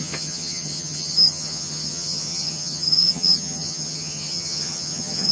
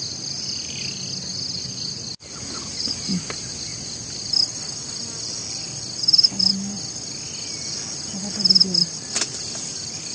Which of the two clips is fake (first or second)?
first